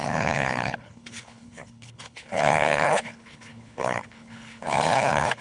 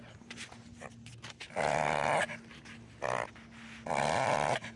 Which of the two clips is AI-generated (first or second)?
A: first